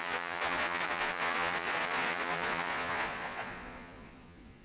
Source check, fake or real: fake